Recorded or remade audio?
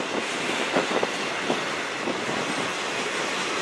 recorded